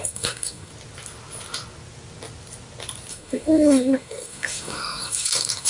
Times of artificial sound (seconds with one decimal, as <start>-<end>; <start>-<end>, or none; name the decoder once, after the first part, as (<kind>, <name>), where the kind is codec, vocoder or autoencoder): 0.0-0.7 (codec, SNAC); 3.1-5.7